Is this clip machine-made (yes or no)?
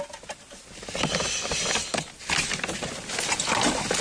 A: no